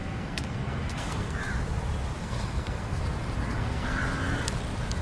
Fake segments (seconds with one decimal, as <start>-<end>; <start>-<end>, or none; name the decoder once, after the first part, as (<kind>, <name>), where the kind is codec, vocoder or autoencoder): 0.0-1.4 (codec, SNAC); 2.2-3.0; 3.5-4.0